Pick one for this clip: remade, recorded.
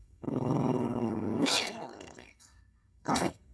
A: remade